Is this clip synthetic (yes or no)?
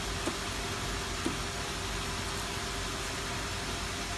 no